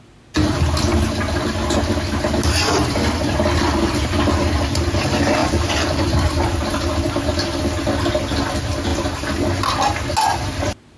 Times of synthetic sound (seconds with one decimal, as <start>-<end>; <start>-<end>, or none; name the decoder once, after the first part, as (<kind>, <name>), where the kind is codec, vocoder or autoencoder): 5.4-7.3 (vocoder, BigVGAN v2); 8.9-9.6